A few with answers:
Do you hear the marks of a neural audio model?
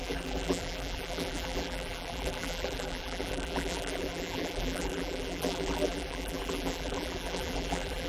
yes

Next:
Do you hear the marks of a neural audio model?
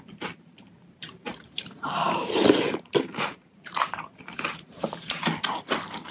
yes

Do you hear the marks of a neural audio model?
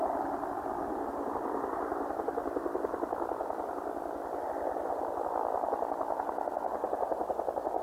yes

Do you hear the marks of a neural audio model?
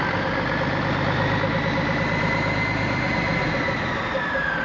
no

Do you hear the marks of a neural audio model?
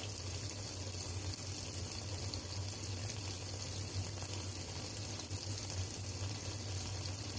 no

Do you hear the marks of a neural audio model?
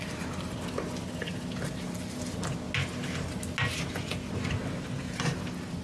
no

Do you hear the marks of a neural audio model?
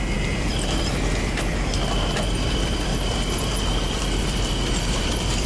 yes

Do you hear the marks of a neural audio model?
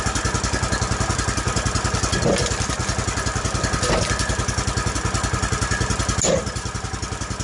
no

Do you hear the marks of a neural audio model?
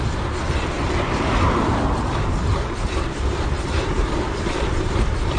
yes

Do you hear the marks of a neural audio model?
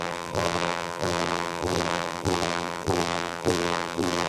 yes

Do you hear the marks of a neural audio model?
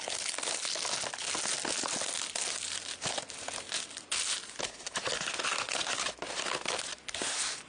no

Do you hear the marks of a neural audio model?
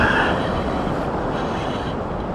no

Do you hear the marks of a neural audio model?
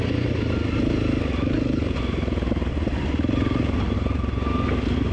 no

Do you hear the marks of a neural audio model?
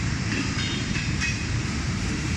yes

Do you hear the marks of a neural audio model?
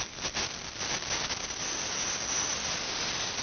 no